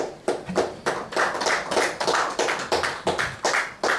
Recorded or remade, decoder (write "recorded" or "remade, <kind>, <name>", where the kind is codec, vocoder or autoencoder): recorded